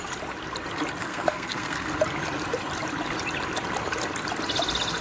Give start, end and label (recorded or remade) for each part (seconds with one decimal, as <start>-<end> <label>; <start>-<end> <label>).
0.0-1.0 recorded; 1.0-1.9 remade; 1.9-5.0 recorded

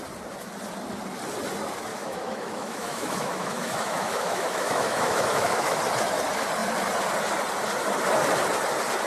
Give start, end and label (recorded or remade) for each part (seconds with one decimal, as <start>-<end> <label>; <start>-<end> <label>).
0.0-1.9 recorded; 1.9-5.8 remade; 5.8-9.1 recorded

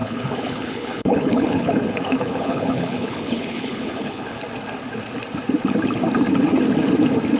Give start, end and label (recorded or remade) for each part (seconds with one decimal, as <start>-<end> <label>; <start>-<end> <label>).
0.0-4.4 remade; 4.4-7.4 recorded

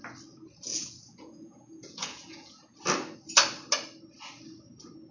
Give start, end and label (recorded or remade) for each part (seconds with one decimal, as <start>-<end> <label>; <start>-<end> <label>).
0.0-0.7 recorded; 0.7-2.8 remade; 2.8-5.1 recorded

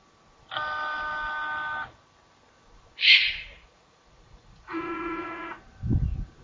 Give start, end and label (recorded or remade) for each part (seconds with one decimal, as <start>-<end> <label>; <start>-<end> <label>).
0.0-3.2 recorded; 3.2-5.5 remade; 5.5-6.4 recorded

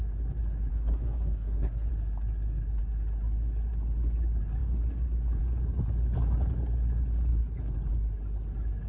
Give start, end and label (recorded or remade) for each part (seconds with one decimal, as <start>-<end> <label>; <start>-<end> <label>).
0.0-0.7 recorded; 0.7-1.9 remade; 1.9-8.9 recorded

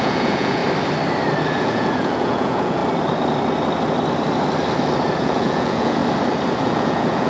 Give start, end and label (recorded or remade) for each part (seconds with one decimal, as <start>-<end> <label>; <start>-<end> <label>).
0.0-0.6 remade; 0.6-1.4 recorded; 1.4-2.8 remade; 2.8-5.2 recorded; 5.2-6.0 remade; 6.0-6.6 recorded; 6.6-7.3 remade